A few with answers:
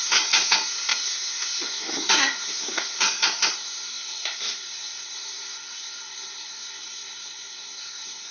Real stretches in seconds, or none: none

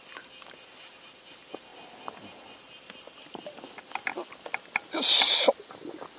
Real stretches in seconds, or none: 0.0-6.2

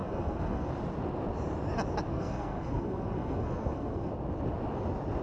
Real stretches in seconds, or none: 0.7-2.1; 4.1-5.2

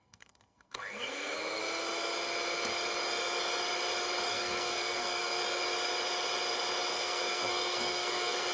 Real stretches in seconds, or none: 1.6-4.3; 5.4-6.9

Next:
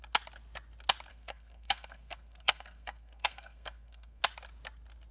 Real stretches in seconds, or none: 0.0-1.1; 4.2-5.1

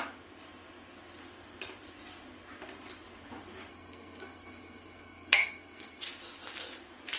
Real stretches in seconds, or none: 0.0-3.7; 6.0-7.2